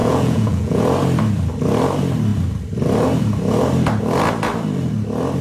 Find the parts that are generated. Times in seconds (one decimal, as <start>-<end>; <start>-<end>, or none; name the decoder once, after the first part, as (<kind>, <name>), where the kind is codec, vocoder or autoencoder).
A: 0.0-0.8 (vocoder, Vocos)